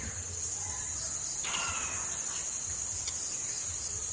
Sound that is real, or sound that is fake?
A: real